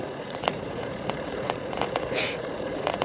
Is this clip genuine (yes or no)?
no